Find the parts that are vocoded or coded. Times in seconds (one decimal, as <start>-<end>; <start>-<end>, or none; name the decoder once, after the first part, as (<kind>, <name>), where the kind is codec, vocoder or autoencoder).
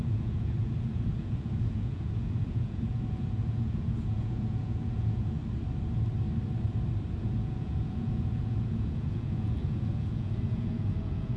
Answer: 0.0-5.4 (vocoder, Vocos); 7.2-11.4